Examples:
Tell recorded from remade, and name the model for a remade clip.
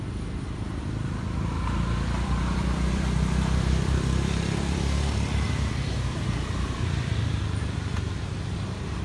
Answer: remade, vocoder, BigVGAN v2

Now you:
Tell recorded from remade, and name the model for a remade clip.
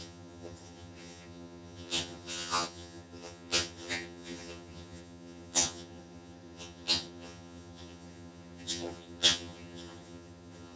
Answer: remade, vocoder, HiFi-GAN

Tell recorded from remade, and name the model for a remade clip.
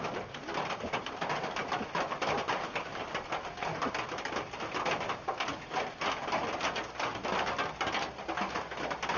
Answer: recorded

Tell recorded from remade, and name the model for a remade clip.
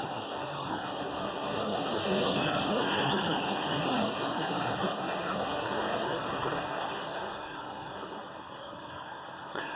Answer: remade, codec, SNAC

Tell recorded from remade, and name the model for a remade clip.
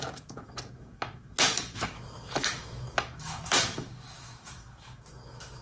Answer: remade, autoencoder, DAC-VAE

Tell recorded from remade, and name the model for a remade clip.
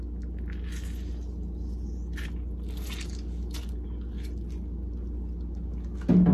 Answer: recorded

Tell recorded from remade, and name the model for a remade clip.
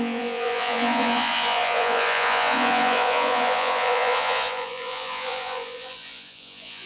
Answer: remade, vocoder, Vocos